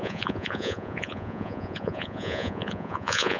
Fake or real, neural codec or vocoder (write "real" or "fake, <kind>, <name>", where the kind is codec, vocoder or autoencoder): fake, vocoder, Vocos